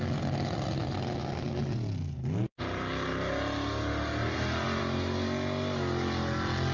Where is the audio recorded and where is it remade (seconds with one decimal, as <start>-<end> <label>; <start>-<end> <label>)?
0.0-6.7 recorded